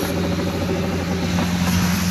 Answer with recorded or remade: recorded